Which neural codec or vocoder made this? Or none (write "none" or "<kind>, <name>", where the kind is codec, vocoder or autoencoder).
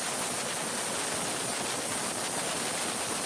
none